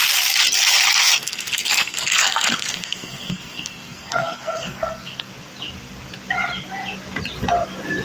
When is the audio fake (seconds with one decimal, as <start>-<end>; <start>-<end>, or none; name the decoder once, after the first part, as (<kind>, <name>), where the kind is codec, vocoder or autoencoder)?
1.0-5.3 (codec, SNAC)